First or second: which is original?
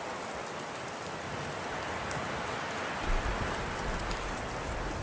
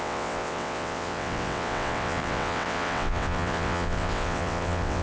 first